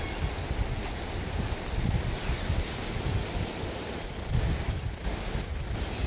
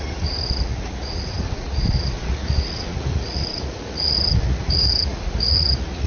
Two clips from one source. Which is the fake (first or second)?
second